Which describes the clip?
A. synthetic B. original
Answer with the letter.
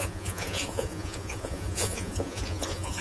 A